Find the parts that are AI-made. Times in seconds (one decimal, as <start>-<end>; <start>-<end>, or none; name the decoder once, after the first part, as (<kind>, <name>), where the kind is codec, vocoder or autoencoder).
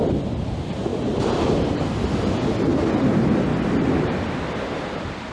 none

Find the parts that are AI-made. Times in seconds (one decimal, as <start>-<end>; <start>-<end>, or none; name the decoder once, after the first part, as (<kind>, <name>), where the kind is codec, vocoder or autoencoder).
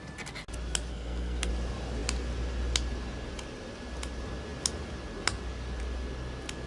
0.9-1.5 (codec, SNAC)